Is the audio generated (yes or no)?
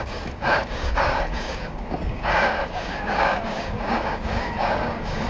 yes